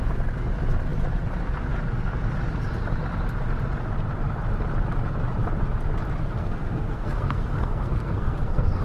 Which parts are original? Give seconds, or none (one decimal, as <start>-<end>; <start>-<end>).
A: 0.0-6.4